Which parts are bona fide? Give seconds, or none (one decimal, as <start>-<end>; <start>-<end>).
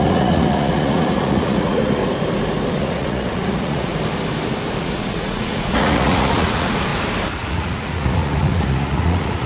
2.0-2.7; 3.9-4.8; 6.9-7.4